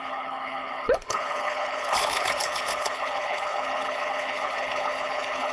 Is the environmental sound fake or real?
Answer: fake